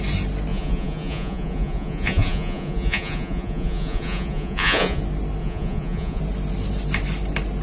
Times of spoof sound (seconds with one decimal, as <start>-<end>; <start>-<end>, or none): 0.5-5.0; 5.4-6.2

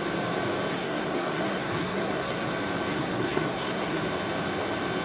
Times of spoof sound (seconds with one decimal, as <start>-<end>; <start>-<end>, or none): 0.7-2.5; 2.9-4.0

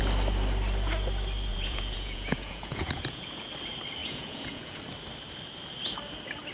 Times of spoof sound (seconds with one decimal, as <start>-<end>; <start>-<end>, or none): 1.5-3.2; 4.0-4.8

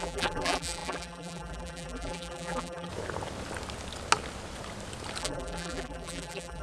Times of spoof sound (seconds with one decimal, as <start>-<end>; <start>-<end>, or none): 0.0-2.9; 5.2-6.6